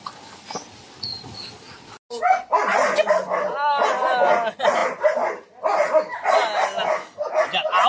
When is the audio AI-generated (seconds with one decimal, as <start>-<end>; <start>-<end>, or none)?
none